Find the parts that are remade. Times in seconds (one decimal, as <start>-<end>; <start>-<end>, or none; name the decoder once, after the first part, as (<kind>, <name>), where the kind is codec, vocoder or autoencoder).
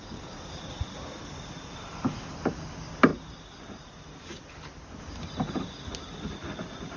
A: none